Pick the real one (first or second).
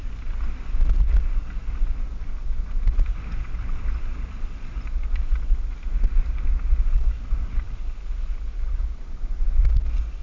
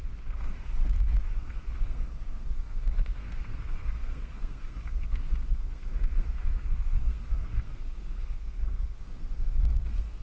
first